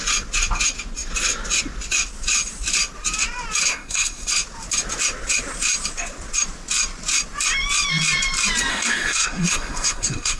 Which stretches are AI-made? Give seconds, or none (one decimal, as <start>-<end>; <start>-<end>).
3.7-4.3; 8.7-10.4

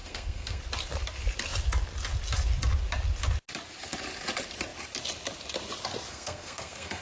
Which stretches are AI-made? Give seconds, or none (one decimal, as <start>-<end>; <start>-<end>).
0.0-0.6; 6.1-7.0

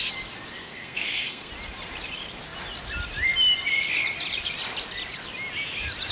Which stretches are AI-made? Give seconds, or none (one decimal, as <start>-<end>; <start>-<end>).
0.6-1.5